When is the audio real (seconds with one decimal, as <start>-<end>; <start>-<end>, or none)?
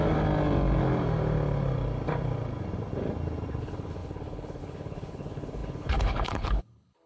0.0-3.6